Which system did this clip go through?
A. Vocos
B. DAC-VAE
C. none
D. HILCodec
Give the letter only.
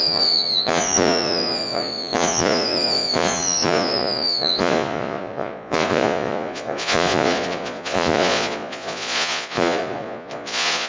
A